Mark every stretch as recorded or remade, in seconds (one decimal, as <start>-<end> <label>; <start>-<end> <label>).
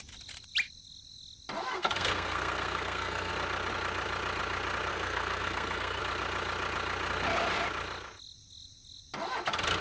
0.0-1.7 recorded; 1.7-3.3 remade; 3.3-4.9 recorded; 4.9-6.0 remade; 6.0-9.8 recorded